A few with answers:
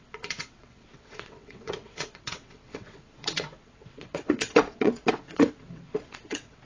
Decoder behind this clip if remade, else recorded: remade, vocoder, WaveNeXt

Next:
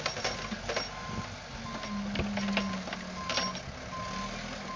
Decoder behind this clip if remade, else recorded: recorded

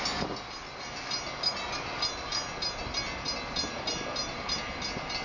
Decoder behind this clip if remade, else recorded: recorded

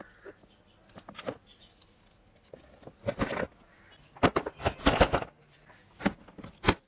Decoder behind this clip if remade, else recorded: recorded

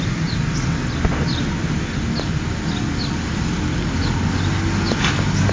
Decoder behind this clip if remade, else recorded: recorded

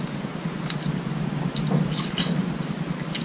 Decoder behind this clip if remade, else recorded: recorded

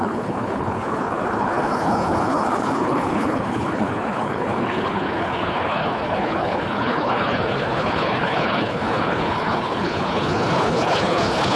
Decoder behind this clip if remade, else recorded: remade, codec, HILCodec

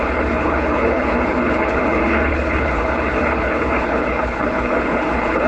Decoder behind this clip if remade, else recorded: remade, codec, HILCodec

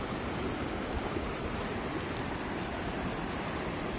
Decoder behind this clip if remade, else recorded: recorded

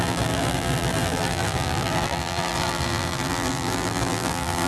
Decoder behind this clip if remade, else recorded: remade, vocoder, BigVGAN v2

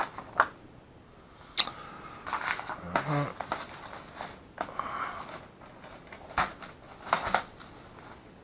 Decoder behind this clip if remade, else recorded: recorded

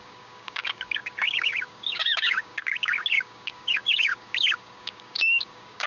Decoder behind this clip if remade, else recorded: remade, codec, DAC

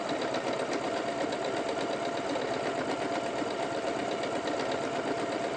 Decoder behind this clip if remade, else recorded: recorded